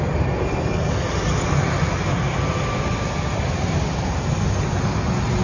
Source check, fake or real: real